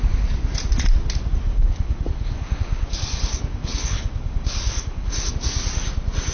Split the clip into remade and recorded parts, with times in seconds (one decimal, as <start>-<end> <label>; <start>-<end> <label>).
0.0-1.5 recorded; 1.5-5.3 remade; 5.3-6.3 recorded